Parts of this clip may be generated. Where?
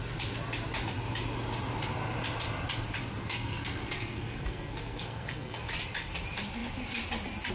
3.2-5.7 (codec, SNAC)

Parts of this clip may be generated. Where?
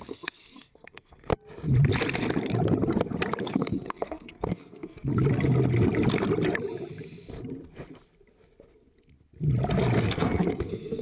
0.0-1.3 (codec, SNAC); 3.4-5.1; 10.0-11.0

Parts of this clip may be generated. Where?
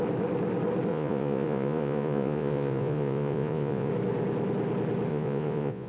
0.9-3.9 (vocoder, Vocos); 5.1-5.9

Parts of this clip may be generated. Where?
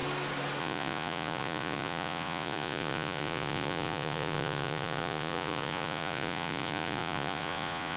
0.6-8.0 (vocoder, Vocos)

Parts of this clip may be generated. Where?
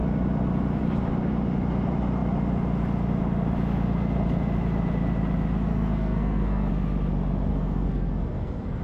5.7-6.7 (codec, SNAC); 7.5-8.8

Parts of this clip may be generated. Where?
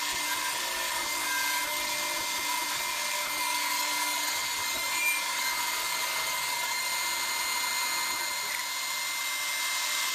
0.0-1.9 (codec, DAC); 2.7-6.9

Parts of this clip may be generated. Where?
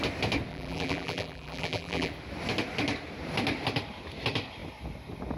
0.5-2.1 (vocoder, BigVGAN v2)